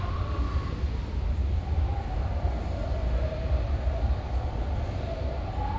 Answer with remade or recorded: recorded